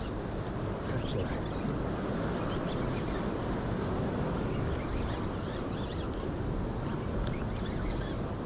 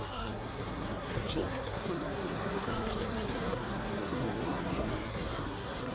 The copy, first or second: second